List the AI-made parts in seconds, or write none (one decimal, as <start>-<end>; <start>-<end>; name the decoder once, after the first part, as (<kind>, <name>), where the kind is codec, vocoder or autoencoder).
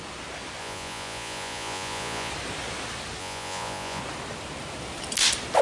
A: 0.6-2.3 (vocoder, Vocos); 3.2-4.0